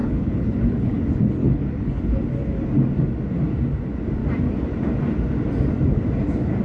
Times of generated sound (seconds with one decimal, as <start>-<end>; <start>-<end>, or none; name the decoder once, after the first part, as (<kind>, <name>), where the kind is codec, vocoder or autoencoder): 0.0-1.0 (codec, HILCodec); 1.4-2.2